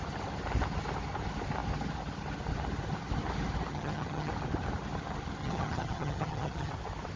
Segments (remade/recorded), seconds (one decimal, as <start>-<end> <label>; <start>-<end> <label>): 0.0-3.7 recorded; 3.7-4.3 remade; 4.3-5.4 recorded; 5.4-6.7 remade; 6.7-7.2 recorded